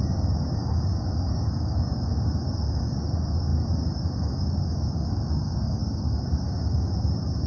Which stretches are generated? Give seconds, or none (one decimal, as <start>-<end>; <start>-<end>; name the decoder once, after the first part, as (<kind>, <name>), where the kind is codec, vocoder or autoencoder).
0.0-7.5 (codec, DAC)